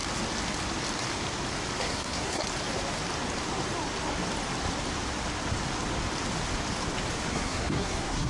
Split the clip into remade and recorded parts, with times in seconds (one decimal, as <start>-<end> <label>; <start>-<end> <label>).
0.0-1.8 recorded; 1.8-2.4 remade; 2.4-7.3 recorded; 7.3-8.3 remade

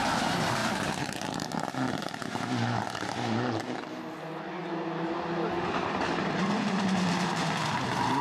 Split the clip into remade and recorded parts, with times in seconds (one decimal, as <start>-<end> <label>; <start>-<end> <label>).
0.0-8.2 recorded

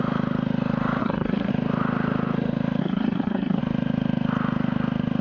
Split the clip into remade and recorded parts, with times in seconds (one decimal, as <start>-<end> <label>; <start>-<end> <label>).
0.0-1.0 recorded; 1.0-1.5 remade; 1.5-2.8 recorded; 2.8-3.6 remade; 3.6-5.2 recorded

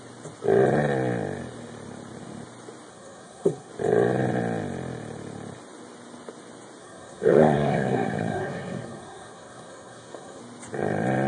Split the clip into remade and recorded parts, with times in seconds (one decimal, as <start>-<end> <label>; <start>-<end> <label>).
0.0-2.9 recorded; 2.9-3.7 remade; 3.7-6.8 recorded; 6.8-10.4 remade; 10.4-11.3 recorded

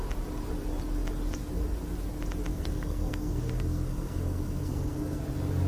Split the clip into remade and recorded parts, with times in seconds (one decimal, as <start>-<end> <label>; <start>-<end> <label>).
0.0-2.5 recorded; 2.5-5.2 remade; 5.2-5.7 recorded

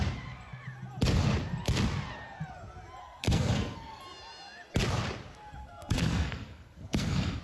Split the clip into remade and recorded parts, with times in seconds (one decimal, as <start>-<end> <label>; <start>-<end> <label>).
0.0-3.0 recorded; 3.0-4.0 remade; 4.0-5.6 recorded; 5.6-7.4 remade